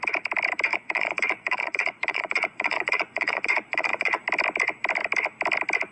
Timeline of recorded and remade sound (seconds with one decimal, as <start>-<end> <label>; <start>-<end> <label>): 0.0-0.7 recorded; 0.7-4.2 remade; 4.2-5.9 recorded

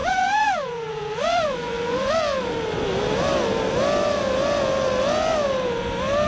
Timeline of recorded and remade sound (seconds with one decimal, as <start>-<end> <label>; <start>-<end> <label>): 0.0-2.1 remade; 2.1-6.3 recorded

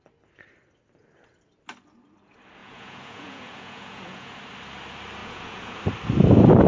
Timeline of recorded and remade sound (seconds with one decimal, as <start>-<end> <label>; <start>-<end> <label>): 0.0-2.6 recorded; 2.6-4.4 remade; 4.4-5.2 recorded; 5.2-5.8 remade; 5.8-6.7 recorded

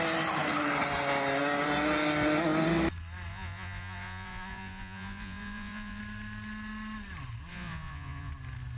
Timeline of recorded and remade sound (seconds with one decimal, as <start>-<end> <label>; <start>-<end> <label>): 0.0-3.3 recorded; 3.3-6.0 remade; 6.0-7.5 recorded; 7.5-8.3 remade; 8.3-8.8 recorded

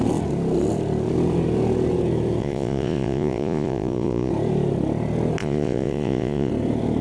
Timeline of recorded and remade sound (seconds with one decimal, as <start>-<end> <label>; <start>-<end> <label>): 0.0-2.4 recorded; 2.4-4.3 remade; 4.3-5.4 recorded; 5.4-6.5 remade; 6.5-7.0 recorded

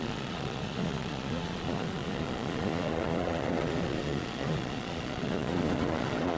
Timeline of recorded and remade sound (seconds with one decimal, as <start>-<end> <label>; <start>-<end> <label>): 0.0-6.4 remade